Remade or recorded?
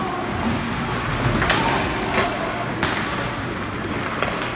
recorded